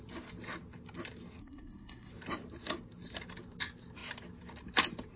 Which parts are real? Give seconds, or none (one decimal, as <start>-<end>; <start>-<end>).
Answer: 0.0-1.4; 2.1-5.2